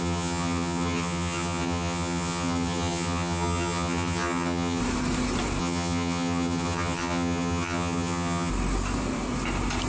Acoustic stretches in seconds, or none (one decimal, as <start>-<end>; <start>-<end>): 4.8-5.6; 8.5-9.9